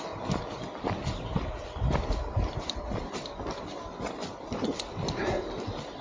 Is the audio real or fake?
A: fake